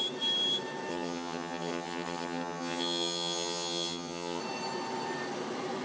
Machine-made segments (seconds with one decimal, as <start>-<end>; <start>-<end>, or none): 0.9-4.4